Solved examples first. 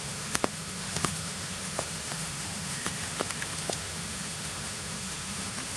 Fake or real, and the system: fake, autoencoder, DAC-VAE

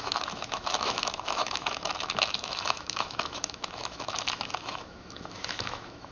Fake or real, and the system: fake, autoencoder, DAC-VAE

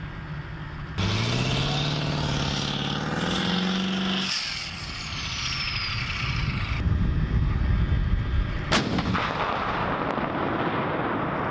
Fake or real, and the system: real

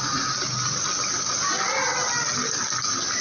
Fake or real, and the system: real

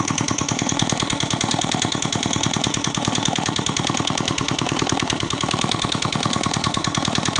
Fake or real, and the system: fake, autoencoder, DAC-VAE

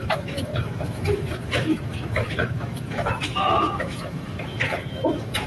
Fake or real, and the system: fake, autoencoder, DAC-VAE